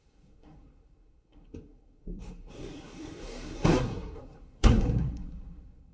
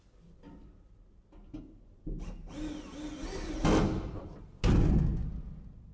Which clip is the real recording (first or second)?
second